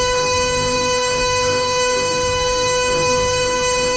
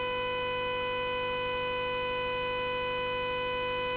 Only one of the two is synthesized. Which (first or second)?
first